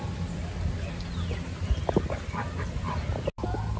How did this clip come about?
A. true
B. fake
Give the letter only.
A